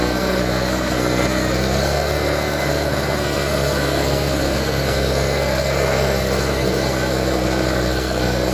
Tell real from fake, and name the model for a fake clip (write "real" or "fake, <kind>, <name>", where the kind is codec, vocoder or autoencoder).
fake, codec, SNAC